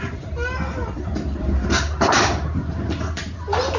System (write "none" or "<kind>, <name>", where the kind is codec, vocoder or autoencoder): none